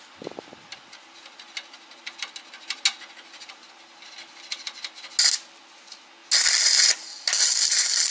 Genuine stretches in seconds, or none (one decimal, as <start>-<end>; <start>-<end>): 0.0-8.1